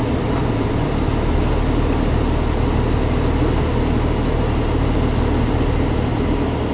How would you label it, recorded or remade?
recorded